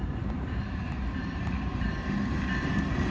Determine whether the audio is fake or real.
fake